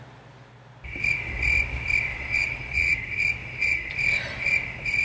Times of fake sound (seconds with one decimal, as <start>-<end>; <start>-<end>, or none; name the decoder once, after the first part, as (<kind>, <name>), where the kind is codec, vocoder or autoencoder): 2.1-3.0 (vocoder, Vocos); 3.4-3.9